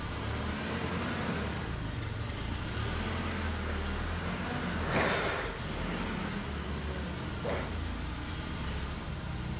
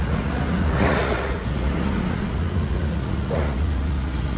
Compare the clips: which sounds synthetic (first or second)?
second